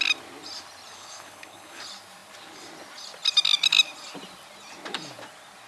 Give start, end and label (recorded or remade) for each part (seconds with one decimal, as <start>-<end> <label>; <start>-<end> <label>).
0.0-0.9 recorded; 0.9-1.8 remade; 1.8-5.7 recorded